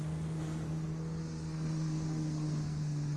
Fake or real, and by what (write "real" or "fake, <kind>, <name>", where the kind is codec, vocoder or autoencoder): fake, codec, SNAC